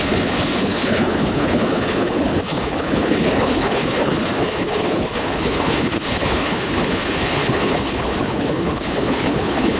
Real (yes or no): no